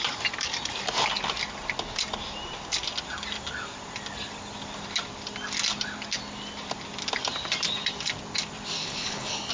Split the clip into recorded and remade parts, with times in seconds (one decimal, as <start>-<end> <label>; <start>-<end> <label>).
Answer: 0.0-8.8 recorded; 8.8-9.5 remade